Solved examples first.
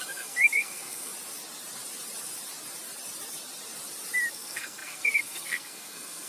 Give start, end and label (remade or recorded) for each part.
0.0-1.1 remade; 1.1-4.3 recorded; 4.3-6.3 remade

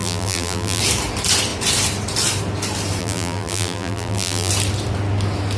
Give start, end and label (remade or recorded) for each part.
0.0-0.8 remade; 0.8-3.0 recorded; 3.0-4.5 remade; 4.5-5.6 recorded

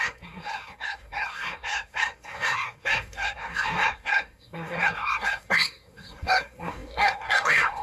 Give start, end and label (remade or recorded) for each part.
0.0-7.8 remade

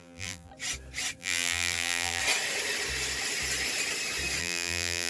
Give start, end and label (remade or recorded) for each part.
0.0-0.5 remade; 0.5-1.2 recorded; 1.2-2.2 remade; 2.2-4.4 recorded; 4.4-5.1 remade